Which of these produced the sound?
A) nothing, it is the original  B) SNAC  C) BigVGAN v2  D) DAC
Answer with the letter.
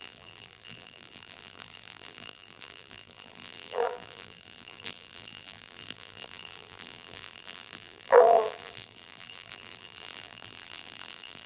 C